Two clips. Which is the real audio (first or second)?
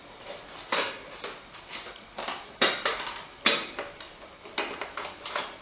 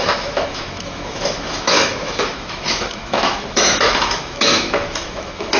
first